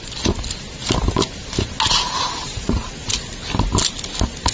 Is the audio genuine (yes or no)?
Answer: yes